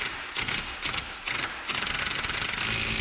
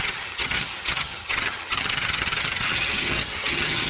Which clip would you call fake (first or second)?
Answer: second